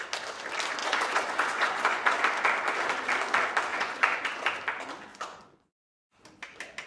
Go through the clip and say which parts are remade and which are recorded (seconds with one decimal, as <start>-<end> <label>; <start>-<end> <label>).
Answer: 0.0-0.8 recorded; 0.8-2.2 remade; 2.2-3.7 recorded; 3.7-4.5 remade; 4.5-5.1 recorded; 5.1-6.0 remade; 6.0-6.9 recorded